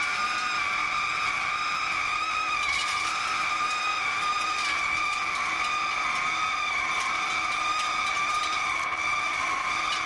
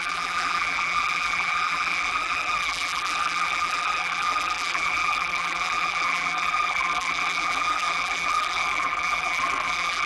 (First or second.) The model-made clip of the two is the second